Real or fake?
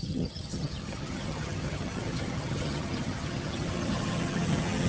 fake